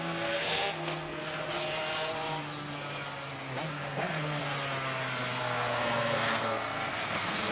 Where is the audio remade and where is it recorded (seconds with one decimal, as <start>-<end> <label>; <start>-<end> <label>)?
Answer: 0.0-1.2 remade; 1.2-3.7 recorded; 3.7-4.4 remade; 4.4-5.4 recorded; 5.4-7.5 remade